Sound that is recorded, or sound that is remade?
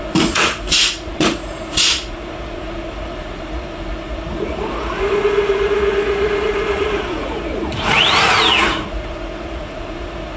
remade